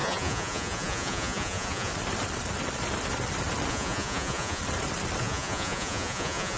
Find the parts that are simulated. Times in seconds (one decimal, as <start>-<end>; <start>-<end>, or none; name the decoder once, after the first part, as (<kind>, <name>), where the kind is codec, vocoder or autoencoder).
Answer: 0.0-1.9 (vocoder, Vocos); 3.7-4.6; 5.2-6.6